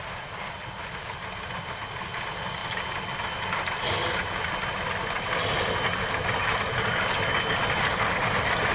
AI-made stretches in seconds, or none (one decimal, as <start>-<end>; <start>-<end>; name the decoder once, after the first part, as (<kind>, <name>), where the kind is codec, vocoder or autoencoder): none